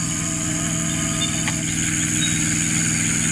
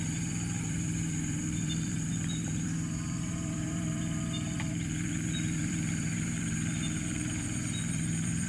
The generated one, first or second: second